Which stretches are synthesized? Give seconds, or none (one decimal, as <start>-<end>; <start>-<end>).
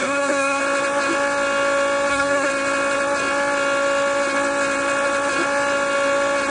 0.0-0.6; 2.1-2.5